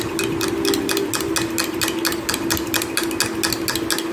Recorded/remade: recorded